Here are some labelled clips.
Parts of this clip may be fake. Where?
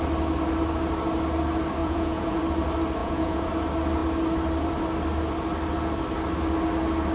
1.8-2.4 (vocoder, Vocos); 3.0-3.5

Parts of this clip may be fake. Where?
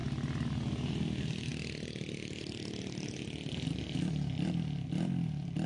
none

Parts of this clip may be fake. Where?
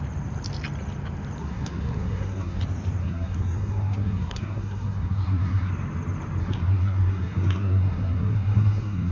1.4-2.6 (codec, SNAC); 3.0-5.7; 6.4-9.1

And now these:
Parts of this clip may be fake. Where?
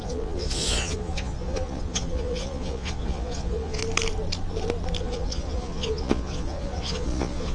0.0-3.8 (vocoder, Vocos); 5.0-7.5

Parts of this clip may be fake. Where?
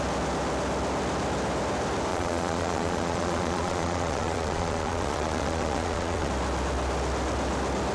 2.1-6.3 (vocoder, Vocos)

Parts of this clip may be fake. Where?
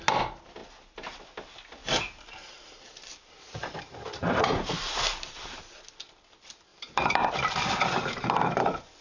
0.6-1.2 (vocoder, BigVGAN v2); 1.8-5.6; 6.7-7.3